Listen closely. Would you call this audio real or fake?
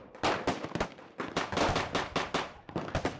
real